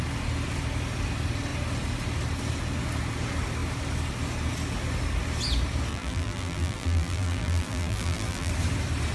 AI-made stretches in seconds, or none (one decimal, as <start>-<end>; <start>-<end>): 5.9-8.5